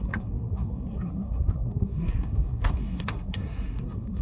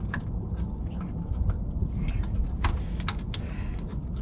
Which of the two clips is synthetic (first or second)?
first